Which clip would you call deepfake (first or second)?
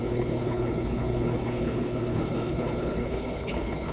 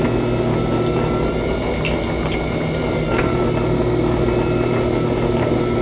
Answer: first